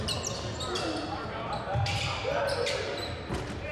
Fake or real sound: real